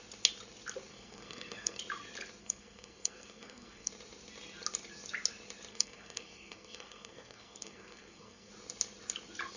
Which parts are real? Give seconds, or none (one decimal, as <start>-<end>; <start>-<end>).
0.0-0.9; 1.8-2.4; 3.9-5.7; 8.5-9.6